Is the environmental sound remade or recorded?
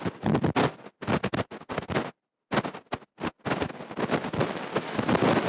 recorded